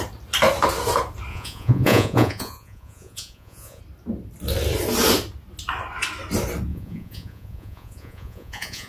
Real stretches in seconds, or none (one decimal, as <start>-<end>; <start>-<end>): 0.0-1.3; 3.8-6.7